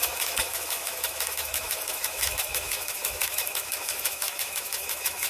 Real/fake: fake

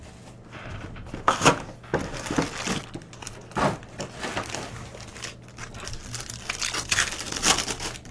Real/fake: real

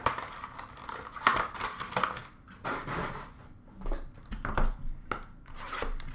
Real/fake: real